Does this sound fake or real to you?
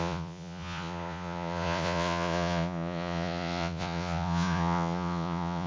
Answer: fake